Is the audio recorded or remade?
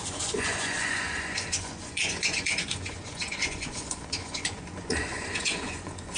remade